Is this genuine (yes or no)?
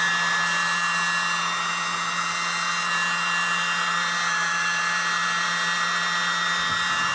yes